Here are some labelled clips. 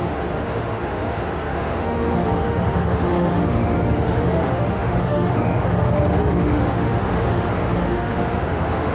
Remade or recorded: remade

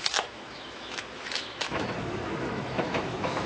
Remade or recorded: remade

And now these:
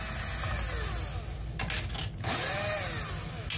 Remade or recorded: recorded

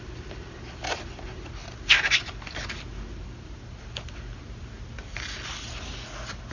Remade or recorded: recorded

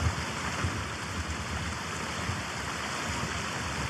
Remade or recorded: recorded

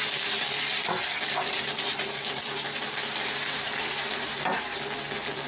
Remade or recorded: recorded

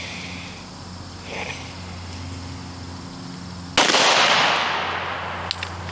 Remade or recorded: recorded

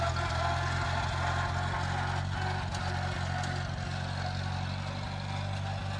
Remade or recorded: recorded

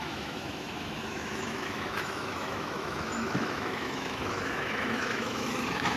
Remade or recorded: remade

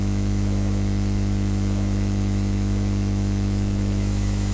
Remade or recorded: remade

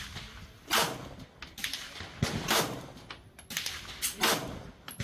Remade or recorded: recorded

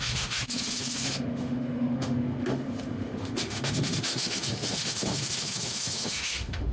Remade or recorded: remade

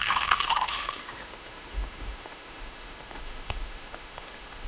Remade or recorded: remade